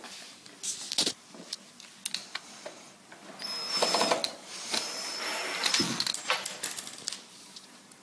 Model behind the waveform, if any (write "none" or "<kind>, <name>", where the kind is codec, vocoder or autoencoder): none